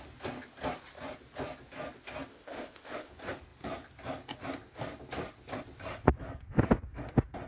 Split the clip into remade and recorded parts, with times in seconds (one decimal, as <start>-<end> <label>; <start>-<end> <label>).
0.0-2.3 recorded; 2.3-3.1 remade; 3.1-7.5 recorded